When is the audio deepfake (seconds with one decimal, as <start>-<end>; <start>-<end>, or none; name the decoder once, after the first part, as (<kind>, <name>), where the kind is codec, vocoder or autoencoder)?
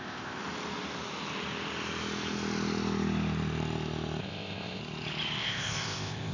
0.0-0.4 (codec, ZipCodec); 4.2-4.8; 5.4-6.3